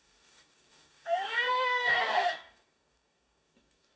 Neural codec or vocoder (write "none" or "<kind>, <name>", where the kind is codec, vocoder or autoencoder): codec, DAC